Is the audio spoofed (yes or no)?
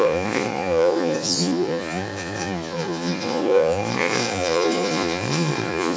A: yes